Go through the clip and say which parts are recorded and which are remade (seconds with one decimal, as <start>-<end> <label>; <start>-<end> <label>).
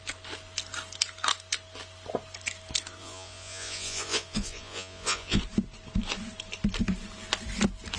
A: 0.0-3.0 recorded; 3.0-5.4 remade; 5.4-8.0 recorded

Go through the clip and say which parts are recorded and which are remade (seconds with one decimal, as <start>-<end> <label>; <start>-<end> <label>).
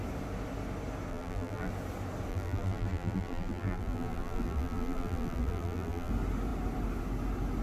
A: 0.0-1.1 recorded; 1.1-1.7 remade; 1.7-2.3 recorded; 2.3-6.1 remade; 6.1-7.6 recorded